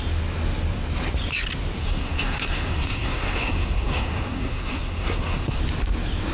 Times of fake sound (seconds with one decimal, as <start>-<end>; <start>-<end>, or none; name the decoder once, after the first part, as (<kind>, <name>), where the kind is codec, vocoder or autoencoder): 1.8-5.6 (codec, SNAC)